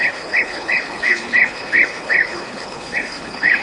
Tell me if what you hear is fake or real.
fake